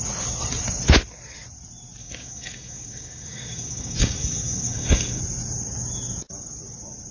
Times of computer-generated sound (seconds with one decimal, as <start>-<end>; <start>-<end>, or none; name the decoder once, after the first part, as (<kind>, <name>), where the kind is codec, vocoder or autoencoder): 2.0-5.2 (codec, DAC)